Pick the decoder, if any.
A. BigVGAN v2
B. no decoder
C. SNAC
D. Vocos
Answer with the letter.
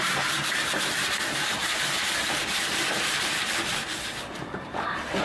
A